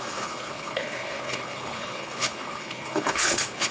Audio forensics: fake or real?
fake